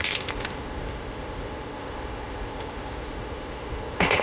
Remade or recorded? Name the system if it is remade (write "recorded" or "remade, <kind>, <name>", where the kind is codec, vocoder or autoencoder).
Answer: remade, codec, ZipCodec